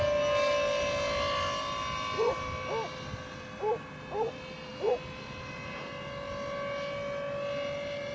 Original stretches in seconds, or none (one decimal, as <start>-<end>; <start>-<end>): 0.0-8.1